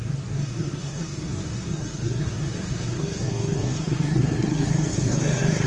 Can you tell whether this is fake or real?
fake